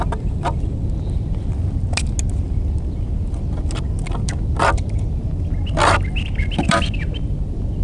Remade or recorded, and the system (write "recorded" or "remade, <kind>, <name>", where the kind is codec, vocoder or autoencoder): recorded